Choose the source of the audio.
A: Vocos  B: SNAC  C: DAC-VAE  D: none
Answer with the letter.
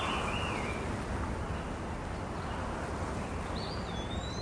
D